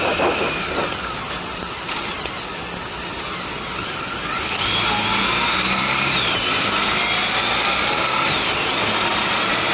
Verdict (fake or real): real